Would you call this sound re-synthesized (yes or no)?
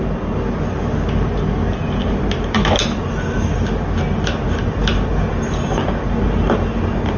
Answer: no